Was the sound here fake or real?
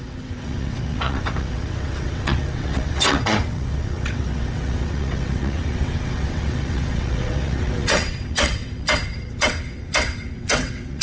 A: fake